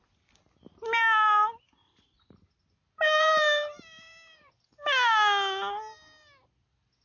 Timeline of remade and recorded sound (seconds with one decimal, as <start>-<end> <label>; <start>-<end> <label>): 0.0-1.8 recorded; 1.8-4.5 remade; 4.5-7.0 recorded